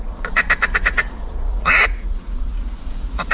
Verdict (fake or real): fake